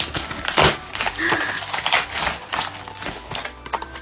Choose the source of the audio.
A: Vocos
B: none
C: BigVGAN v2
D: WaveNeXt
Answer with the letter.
B